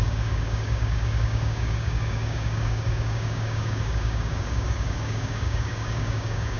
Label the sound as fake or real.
fake